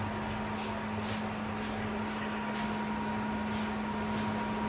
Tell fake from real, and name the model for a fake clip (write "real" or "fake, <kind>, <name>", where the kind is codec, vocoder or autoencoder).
real